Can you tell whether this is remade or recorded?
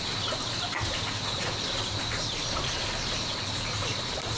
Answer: recorded